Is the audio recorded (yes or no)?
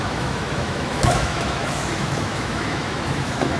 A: no